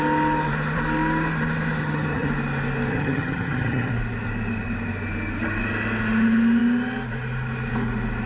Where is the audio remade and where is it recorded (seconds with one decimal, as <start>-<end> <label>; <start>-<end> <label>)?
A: 0.0-1.8 recorded; 1.8-2.3 remade; 2.3-2.9 recorded; 2.9-3.9 remade; 3.9-8.3 recorded